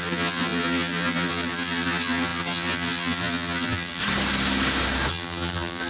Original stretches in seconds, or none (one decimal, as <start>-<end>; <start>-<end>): 4.0-5.1